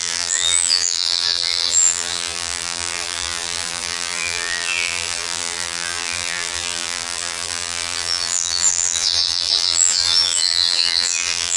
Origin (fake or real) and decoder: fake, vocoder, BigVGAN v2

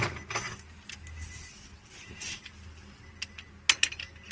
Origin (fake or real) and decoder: real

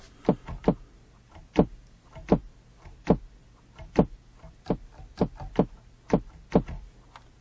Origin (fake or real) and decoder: real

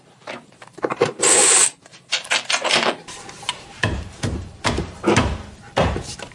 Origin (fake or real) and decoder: fake, vocoder, BigVGAN v2